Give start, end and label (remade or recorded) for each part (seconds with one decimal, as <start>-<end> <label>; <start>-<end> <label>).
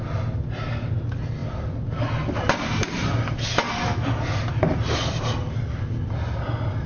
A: 0.0-6.9 recorded